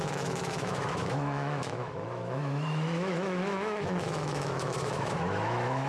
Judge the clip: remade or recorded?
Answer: remade